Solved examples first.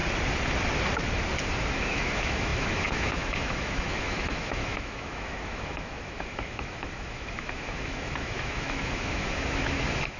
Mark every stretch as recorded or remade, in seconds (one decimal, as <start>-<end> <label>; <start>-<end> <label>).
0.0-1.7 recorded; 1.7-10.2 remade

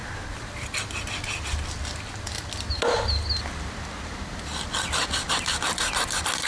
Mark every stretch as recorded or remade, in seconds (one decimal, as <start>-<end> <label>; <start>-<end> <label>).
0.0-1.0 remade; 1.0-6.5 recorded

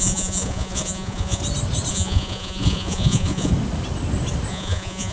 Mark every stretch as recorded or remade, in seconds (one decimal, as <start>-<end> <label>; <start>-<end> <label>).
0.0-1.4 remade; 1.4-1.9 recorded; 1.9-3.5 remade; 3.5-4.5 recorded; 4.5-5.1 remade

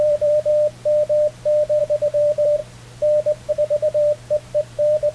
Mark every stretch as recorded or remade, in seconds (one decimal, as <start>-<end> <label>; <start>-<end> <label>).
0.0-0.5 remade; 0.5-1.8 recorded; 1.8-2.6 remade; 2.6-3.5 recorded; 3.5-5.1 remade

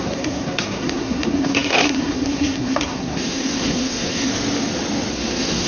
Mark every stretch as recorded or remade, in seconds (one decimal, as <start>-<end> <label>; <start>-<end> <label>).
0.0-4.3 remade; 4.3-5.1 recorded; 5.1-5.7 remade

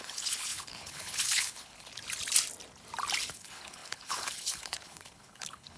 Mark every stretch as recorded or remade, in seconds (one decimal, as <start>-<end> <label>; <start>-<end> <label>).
0.0-1.9 remade; 1.9-3.3 recorded; 3.3-5.8 remade